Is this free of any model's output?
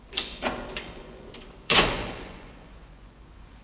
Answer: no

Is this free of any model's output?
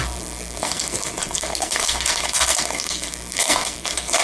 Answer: no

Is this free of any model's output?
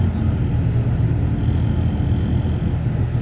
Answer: yes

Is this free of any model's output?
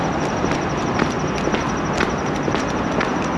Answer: yes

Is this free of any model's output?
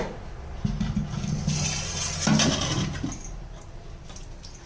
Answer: yes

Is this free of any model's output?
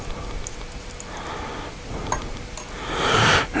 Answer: yes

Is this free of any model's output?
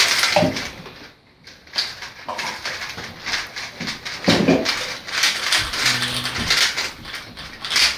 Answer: yes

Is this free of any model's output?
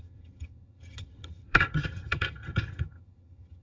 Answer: no